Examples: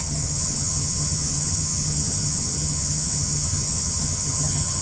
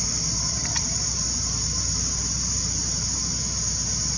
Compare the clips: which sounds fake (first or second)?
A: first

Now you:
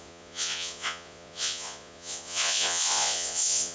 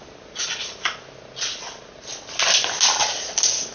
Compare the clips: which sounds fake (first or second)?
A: first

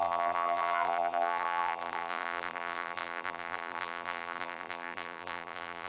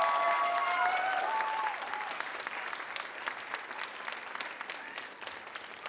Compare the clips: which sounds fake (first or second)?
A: first